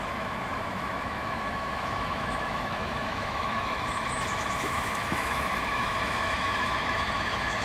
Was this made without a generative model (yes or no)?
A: no